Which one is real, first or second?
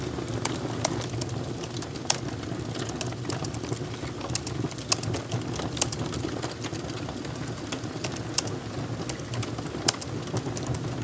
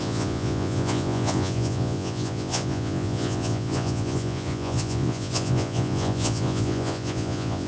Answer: first